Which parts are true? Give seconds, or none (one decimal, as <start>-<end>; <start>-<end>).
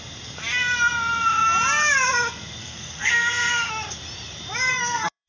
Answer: 0.0-2.6; 3.7-4.7